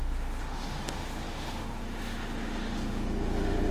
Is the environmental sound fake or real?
fake